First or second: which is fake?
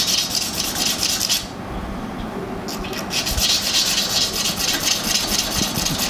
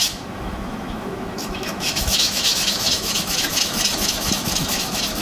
second